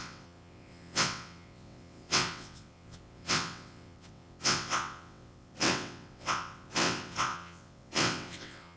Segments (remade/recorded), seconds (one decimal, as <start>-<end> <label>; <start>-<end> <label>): 0.0-8.8 remade